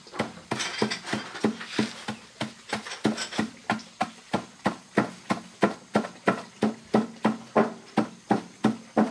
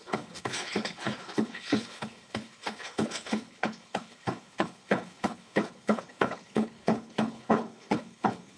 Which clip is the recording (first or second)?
first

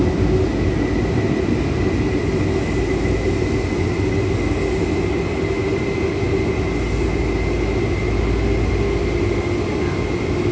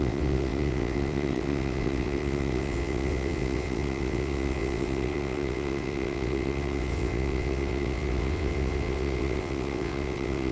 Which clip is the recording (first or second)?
first